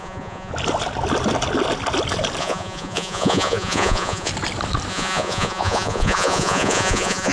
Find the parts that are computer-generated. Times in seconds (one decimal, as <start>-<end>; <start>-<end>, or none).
0.0-0.5; 2.4-4.3; 4.9-7.3